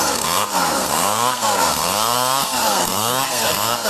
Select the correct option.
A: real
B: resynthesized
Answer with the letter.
B